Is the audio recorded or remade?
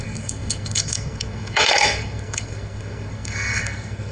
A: remade